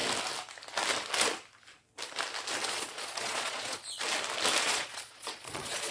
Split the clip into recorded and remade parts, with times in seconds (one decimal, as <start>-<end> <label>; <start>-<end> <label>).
0.0-2.7 recorded; 2.7-3.8 remade; 3.8-4.6 recorded; 4.6-5.9 remade